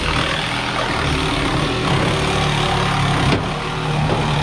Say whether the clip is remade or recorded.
recorded